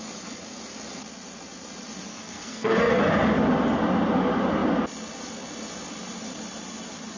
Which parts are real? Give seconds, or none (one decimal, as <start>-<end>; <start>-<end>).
0.0-2.1; 3.0-7.2